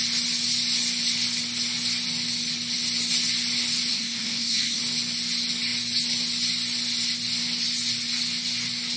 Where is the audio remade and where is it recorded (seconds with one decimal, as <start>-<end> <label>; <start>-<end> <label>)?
0.0-3.9 recorded; 3.9-4.8 remade; 4.8-9.0 recorded